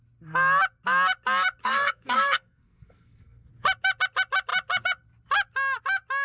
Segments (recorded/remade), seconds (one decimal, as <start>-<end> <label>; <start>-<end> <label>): 0.0-1.6 recorded; 1.6-3.5 remade; 3.5-6.2 recorded